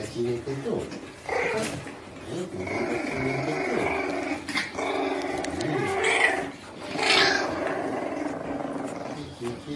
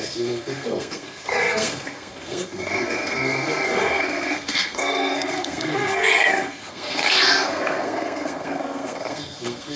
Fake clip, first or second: second